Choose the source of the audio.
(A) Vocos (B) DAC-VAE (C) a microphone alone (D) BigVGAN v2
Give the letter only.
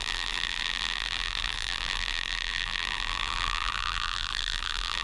D